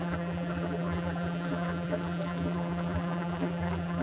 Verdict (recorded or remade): remade